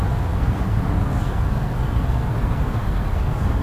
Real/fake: fake